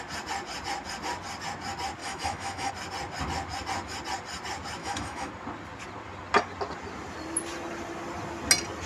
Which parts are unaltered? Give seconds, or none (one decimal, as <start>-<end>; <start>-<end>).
0.0-2.0; 2.7-4.8; 5.3-8.9